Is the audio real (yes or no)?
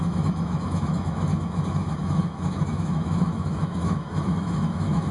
no